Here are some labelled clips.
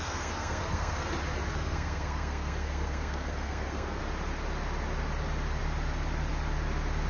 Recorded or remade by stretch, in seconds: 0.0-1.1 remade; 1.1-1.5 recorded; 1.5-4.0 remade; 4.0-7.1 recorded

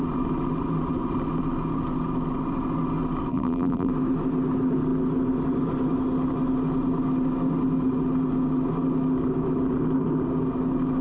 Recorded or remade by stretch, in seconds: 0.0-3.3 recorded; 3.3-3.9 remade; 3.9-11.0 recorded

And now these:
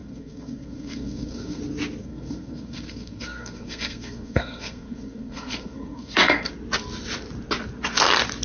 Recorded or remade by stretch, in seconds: 0.0-1.6 remade; 1.6-2.0 recorded; 2.0-6.5 remade; 6.5-8.4 recorded

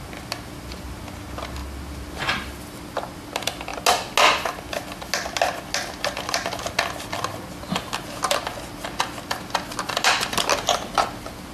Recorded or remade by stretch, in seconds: 0.0-11.5 recorded

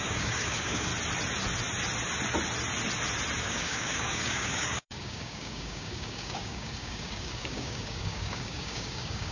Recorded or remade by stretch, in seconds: 0.0-0.9 remade; 0.9-3.4 recorded; 3.4-9.3 remade

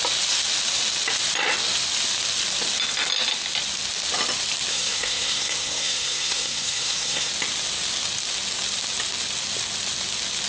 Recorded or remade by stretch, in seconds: 0.0-4.7 recorded; 4.7-7.3 remade; 7.3-10.5 recorded

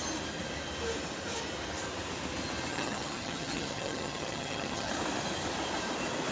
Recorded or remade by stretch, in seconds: 0.0-2.7 recorded; 2.7-4.9 remade; 4.9-6.3 recorded

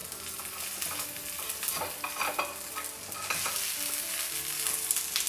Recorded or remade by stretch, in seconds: 0.0-5.3 recorded